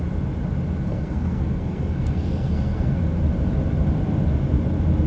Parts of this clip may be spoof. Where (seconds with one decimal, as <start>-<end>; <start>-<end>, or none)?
0.9-3.0